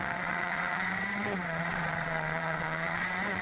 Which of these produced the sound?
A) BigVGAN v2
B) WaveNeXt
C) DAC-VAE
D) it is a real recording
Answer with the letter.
B